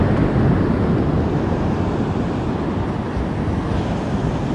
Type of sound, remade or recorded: recorded